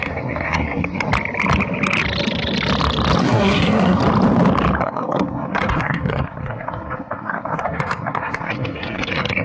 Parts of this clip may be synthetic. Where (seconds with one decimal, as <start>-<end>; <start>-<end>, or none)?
0.0-1.1; 3.2-4.0; 4.8-9.4

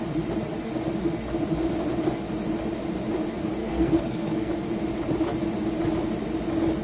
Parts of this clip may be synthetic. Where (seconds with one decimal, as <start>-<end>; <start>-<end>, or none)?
3.6-4.5

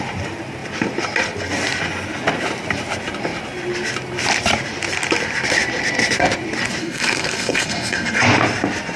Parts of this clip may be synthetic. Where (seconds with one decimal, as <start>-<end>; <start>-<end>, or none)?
6.8-8.2

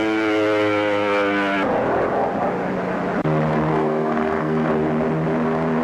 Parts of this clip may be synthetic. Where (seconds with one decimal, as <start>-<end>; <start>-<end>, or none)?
3.7-4.7